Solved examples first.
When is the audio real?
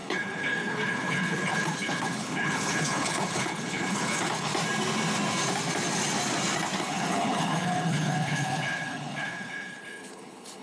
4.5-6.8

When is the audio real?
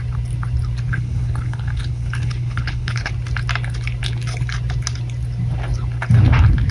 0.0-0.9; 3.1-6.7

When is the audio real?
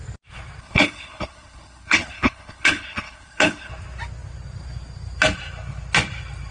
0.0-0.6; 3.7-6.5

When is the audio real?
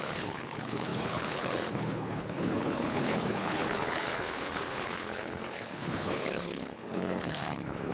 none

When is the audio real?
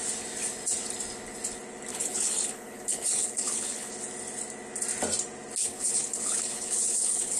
0.0-1.9; 3.9-5.6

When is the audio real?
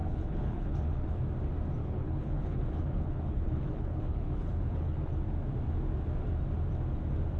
1.2-1.8; 5.1-7.4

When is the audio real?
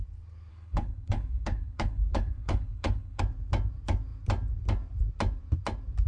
0.0-0.5; 3.2-6.1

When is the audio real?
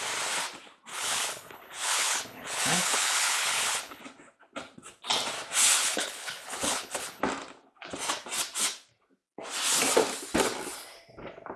0.0-0.9; 4.0-5.8; 7.2-11.6